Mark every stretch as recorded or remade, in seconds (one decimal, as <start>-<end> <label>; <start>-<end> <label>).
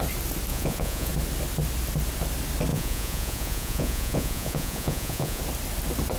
0.0-0.5 recorded; 0.5-1.1 remade; 1.1-2.7 recorded; 2.7-5.4 remade; 5.4-6.2 recorded